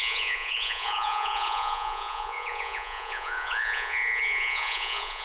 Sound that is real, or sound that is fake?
fake